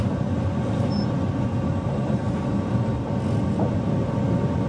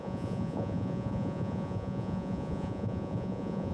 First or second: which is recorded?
first